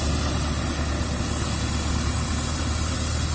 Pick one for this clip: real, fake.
real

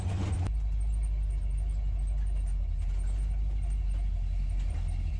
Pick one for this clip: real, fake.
real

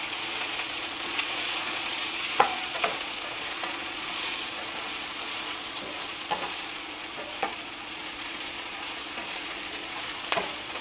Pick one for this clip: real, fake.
fake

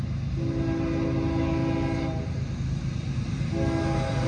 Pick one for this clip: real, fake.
real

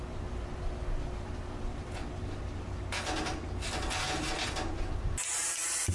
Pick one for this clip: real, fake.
real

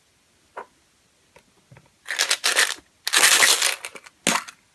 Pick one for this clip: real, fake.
real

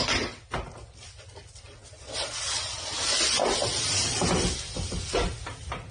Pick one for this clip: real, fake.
real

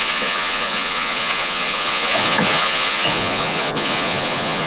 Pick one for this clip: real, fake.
fake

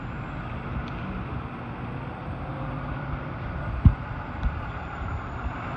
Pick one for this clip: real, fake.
real